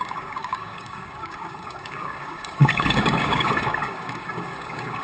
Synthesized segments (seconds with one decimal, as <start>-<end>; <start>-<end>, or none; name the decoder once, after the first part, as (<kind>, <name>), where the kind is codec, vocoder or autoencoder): 0.0-5.0 (codec, DAC)